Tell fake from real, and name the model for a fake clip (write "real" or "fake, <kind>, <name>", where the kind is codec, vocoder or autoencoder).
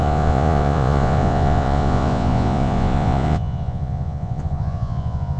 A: fake, vocoder, Vocos